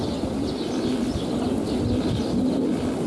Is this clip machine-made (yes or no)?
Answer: no